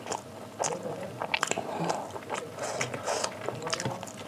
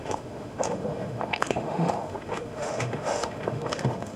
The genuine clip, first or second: first